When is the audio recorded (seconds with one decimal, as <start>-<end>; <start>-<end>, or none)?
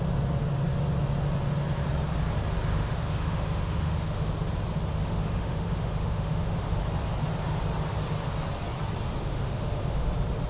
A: 0.0-2.7; 4.3-4.9; 6.8-9.3; 10.1-10.5